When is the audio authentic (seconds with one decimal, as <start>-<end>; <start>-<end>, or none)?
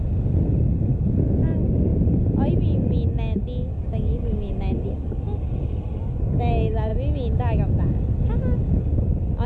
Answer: 0.0-9.5